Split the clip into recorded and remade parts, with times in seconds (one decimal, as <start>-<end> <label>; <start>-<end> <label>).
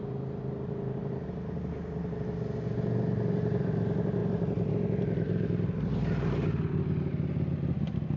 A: 0.0-8.2 recorded